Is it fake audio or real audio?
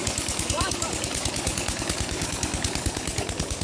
fake